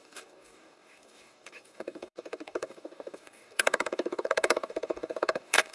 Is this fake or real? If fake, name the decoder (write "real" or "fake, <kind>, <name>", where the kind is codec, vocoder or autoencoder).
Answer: fake, codec, DAC